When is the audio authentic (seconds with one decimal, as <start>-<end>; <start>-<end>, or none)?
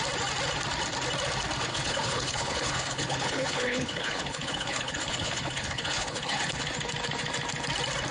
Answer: 0.0-1.7; 6.6-8.1